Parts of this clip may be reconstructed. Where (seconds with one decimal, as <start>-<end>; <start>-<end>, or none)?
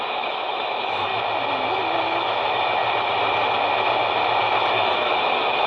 0.0-1.1; 2.0-2.8; 4.7-5.7